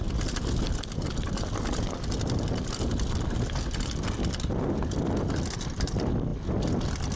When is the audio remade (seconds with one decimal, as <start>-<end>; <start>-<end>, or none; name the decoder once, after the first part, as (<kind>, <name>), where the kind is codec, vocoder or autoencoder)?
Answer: none